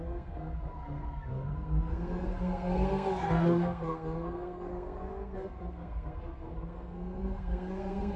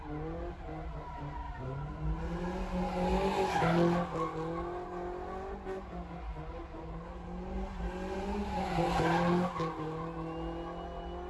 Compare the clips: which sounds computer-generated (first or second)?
first